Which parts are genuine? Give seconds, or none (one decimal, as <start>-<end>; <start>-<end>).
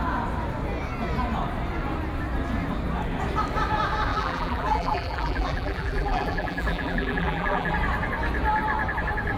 0.0-4.1; 7.7-9.4